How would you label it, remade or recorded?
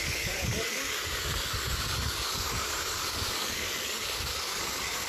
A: remade